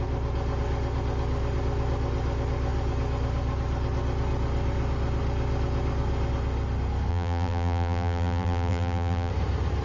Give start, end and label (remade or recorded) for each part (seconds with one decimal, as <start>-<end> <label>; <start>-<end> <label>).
0.0-7.1 recorded; 7.1-9.3 remade; 9.3-9.8 recorded